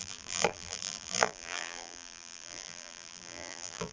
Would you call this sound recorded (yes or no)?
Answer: no